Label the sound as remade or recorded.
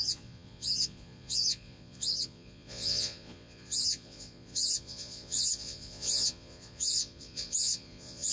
remade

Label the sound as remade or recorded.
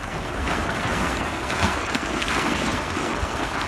remade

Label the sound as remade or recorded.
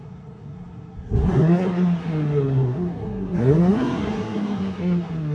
remade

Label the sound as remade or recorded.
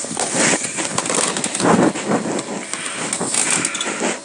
recorded